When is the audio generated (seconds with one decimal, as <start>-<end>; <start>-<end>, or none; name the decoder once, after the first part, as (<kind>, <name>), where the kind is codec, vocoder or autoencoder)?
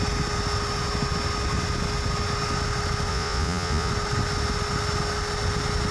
3.1-3.9 (vocoder, Vocos)